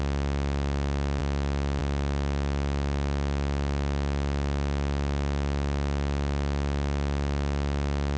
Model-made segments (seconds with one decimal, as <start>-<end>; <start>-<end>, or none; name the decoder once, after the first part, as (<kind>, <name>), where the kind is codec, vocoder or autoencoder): none